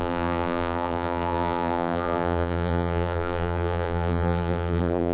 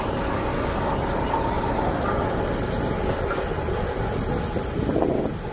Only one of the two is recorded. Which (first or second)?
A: second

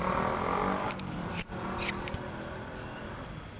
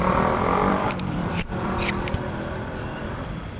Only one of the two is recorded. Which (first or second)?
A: first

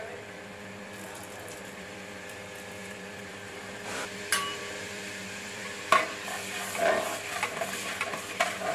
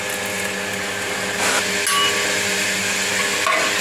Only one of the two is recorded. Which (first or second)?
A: second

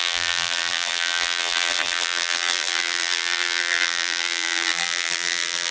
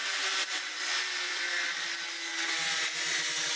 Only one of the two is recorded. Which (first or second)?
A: second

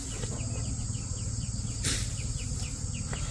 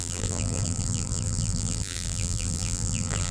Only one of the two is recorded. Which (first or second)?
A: first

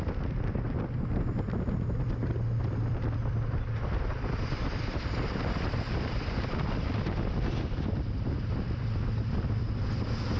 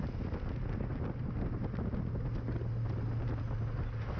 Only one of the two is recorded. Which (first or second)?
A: second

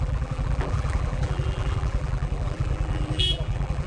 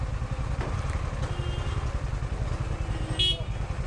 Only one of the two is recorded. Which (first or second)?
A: second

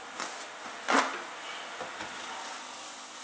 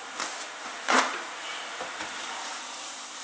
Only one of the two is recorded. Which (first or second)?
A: first